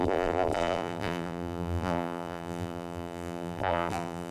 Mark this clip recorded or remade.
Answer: remade